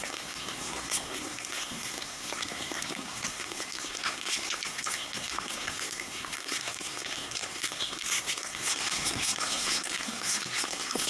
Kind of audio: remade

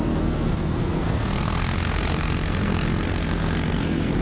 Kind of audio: remade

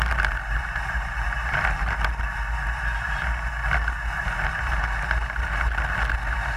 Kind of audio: recorded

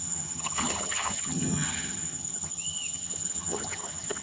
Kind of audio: remade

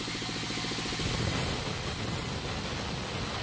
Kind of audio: recorded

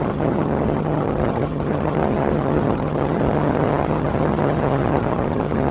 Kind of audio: remade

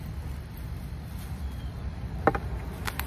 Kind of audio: recorded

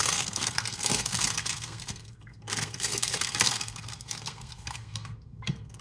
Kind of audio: remade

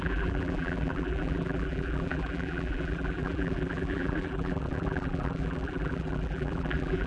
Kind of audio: remade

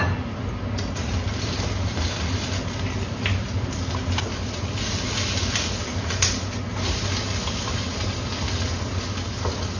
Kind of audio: recorded